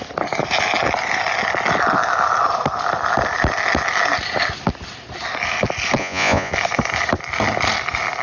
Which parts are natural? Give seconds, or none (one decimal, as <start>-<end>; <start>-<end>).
0.0-6.0; 6.5-8.2